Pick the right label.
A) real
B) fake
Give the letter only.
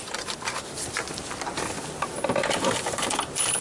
B